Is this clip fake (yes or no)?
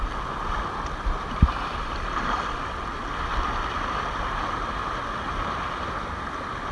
no